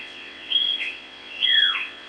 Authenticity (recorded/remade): remade